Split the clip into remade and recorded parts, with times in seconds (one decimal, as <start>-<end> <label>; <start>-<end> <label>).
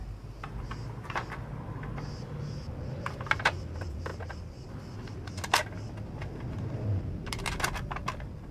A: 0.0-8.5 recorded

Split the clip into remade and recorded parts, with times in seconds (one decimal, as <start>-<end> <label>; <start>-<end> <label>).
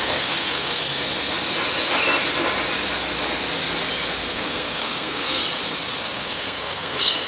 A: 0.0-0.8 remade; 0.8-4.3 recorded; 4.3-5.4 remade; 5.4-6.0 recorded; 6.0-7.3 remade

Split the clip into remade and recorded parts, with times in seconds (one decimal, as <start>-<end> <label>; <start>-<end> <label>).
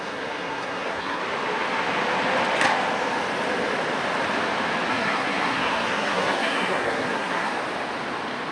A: 0.0-1.2 remade; 1.2-4.9 recorded; 4.9-7.5 remade; 7.5-8.5 recorded